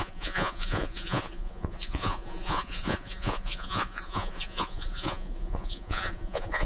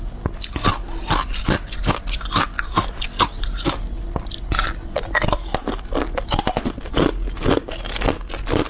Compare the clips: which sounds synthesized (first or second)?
first